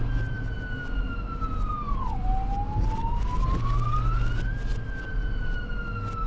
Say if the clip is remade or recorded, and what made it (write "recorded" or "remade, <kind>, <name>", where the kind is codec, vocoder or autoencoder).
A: recorded